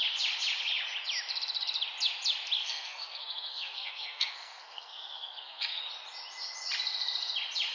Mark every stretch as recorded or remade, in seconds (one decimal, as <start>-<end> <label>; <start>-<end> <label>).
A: 0.0-2.6 recorded; 2.6-5.8 remade; 5.8-7.7 recorded